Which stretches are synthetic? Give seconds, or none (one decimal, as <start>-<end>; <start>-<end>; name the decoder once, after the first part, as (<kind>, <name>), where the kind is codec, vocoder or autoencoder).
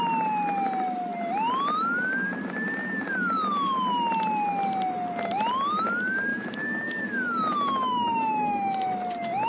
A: 6.3-9.1 (autoencoder, DAC-VAE)